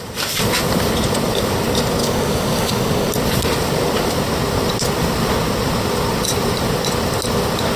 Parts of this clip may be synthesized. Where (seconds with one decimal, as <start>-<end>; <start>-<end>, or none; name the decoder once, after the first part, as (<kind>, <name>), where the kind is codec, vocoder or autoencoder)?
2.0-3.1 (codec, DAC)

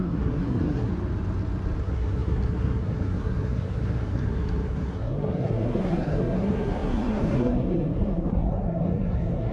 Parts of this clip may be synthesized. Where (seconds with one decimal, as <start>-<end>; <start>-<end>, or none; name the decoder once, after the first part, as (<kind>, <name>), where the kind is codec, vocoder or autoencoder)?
0.0-0.9 (codec, SNAC); 1.8-9.5

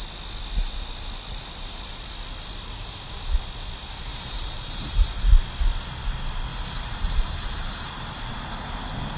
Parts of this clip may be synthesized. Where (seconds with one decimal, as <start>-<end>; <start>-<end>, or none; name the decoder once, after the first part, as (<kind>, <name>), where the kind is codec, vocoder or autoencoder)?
4.1-5.1 (vocoder, BigVGAN v2); 6.5-7.9

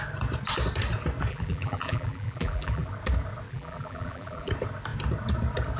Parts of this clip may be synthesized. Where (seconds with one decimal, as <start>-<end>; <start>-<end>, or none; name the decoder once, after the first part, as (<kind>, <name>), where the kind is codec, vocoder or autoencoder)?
1.3-2.9 (vocoder, BigVGAN v2); 3.5-4.5

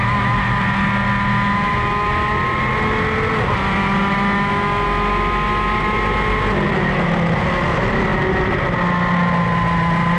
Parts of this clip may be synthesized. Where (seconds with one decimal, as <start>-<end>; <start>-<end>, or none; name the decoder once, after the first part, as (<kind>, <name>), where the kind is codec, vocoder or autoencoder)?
none

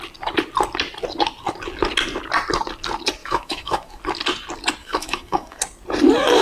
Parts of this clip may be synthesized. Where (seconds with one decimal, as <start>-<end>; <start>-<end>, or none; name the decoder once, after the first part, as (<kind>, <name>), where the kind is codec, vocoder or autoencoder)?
3.2-4.0 (autoencoder, DAC-VAE); 4.8-5.6